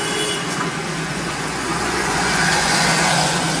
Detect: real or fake fake